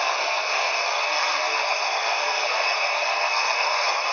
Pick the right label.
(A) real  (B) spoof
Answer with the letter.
B